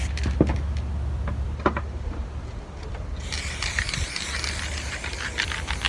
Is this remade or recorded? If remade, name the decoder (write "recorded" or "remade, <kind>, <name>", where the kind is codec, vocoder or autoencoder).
recorded